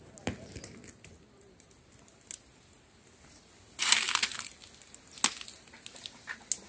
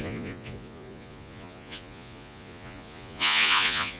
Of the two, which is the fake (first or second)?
second